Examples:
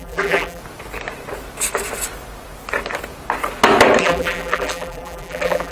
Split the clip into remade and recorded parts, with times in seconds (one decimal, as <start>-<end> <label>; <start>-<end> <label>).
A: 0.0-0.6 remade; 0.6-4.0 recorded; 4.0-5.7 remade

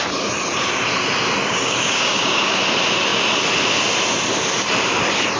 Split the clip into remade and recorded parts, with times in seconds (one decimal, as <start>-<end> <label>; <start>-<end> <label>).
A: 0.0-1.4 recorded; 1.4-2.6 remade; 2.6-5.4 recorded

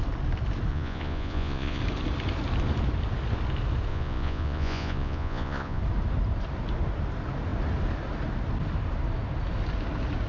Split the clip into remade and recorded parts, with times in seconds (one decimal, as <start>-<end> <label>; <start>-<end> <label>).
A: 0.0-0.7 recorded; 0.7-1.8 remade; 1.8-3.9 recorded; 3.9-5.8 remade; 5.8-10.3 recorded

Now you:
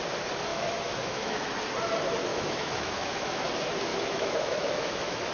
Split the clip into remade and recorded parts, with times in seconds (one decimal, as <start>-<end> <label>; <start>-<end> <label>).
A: 0.0-0.5 recorded; 0.5-1.5 remade; 1.5-2.3 recorded; 2.3-3.5 remade; 3.5-3.9 recorded; 3.9-5.3 remade

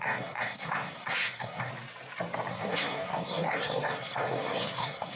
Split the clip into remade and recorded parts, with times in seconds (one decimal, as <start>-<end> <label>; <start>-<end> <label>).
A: 0.0-1.7 remade; 1.7-2.5 recorded; 2.5-5.2 remade

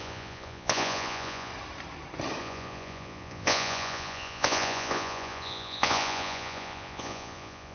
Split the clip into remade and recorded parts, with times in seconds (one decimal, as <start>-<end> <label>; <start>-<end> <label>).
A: 0.0-1.5 remade; 1.5-2.4 recorded; 2.4-7.7 remade

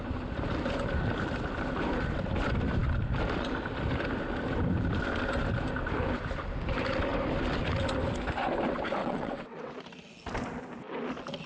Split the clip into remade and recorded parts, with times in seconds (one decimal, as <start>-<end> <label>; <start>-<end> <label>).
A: 0.0-9.0 recorded; 9.0-9.7 remade; 9.7-11.5 recorded